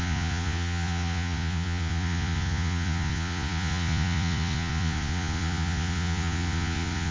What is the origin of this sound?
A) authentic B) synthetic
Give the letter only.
B